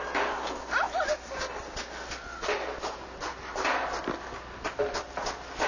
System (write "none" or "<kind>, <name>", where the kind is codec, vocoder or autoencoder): none